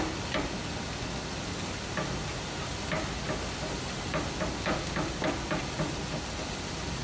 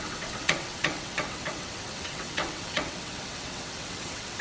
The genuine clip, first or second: first